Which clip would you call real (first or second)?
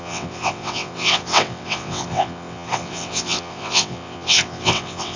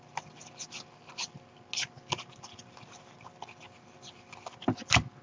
second